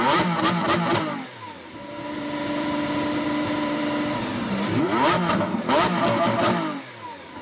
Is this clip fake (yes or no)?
yes